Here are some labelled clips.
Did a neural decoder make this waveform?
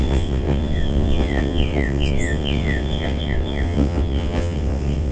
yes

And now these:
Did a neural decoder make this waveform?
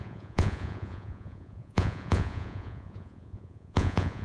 yes